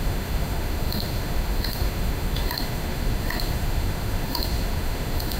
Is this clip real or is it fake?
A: fake